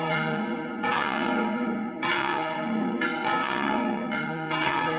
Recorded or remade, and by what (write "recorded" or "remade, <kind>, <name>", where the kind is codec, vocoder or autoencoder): remade, vocoder, WaveNeXt